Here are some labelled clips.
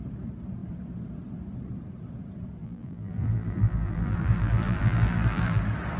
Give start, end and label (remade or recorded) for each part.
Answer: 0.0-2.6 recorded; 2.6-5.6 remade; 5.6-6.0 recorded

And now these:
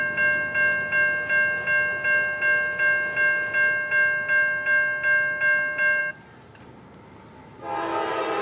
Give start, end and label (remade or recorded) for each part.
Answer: 0.0-8.4 recorded

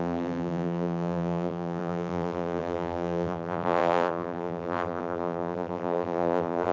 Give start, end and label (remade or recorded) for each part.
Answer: 0.0-6.7 remade

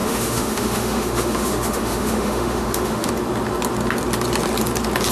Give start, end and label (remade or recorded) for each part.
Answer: 0.0-3.1 remade; 3.1-5.1 recorded

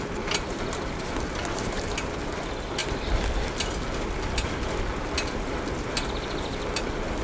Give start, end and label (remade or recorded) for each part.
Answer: 0.0-7.2 recorded